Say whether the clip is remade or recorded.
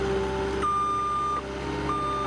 recorded